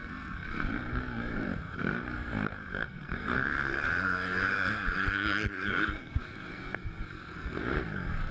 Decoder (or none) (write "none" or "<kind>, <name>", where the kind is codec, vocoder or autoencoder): codec, SNAC